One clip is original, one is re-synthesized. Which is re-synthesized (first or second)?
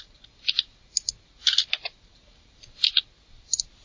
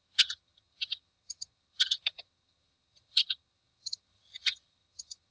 second